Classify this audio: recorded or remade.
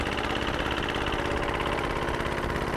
recorded